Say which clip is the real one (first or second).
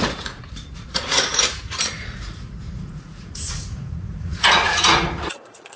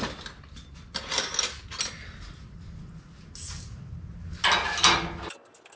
second